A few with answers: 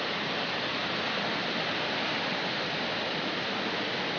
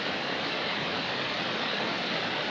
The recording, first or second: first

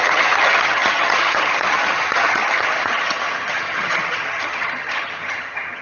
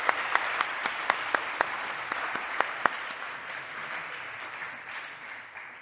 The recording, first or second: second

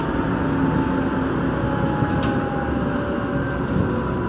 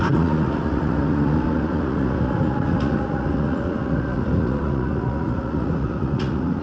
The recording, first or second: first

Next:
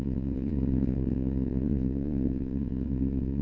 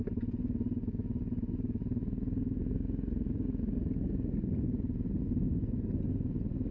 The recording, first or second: second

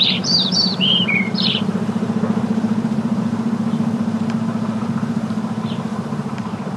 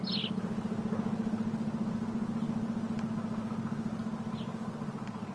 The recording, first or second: second